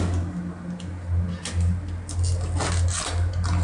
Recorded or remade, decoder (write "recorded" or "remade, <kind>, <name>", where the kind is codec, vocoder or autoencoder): recorded